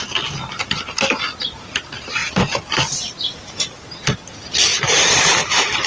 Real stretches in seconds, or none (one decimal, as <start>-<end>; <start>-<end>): 0.0-2.2; 3.5-4.7; 5.2-5.9